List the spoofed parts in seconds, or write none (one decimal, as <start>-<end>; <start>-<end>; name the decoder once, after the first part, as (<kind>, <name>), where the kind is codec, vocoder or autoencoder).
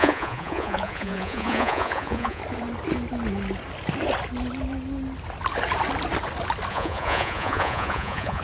0.0-2.4 (vocoder, Vocos); 6.7-8.4